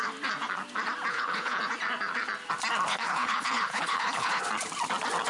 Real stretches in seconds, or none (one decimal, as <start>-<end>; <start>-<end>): 0.0-1.1; 1.6-2.9; 4.4-5.3